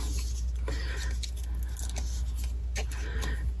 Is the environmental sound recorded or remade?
recorded